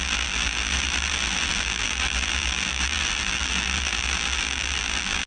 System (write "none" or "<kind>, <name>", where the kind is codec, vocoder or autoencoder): vocoder, BigVGAN v2